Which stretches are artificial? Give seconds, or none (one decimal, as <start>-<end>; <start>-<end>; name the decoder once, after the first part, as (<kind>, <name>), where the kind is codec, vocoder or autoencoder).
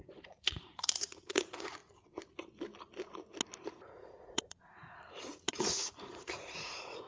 0.0-1.8 (vocoder, Vocos); 3.6-7.1